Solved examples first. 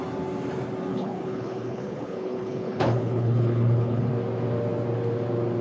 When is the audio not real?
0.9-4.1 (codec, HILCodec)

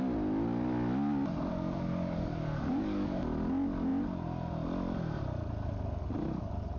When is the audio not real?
1.5-3.2 (codec, DAC)

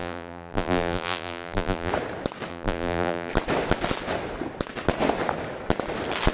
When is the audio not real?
0.0-1.9 (vocoder, BigVGAN v2); 2.5-3.3

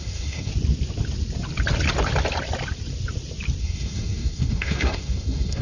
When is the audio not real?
0.0-0.5 (codec, SNAC); 3.6-5.6